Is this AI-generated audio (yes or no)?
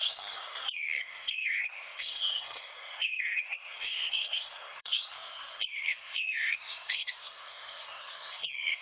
yes